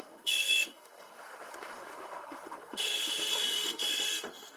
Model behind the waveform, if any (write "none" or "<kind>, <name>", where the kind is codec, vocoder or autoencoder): autoencoder, DAC-VAE